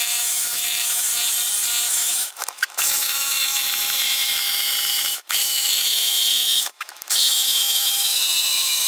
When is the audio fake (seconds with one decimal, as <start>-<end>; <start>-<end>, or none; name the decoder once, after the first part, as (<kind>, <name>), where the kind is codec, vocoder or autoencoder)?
0.0-1.1 (autoencoder, DAC-VAE); 1.9-8.9